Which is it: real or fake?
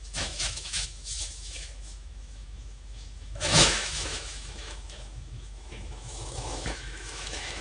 fake